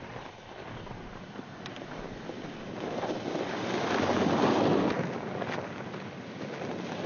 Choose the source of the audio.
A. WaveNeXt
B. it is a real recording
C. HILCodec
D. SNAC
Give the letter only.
B